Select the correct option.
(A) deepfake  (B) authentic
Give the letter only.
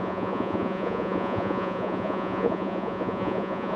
A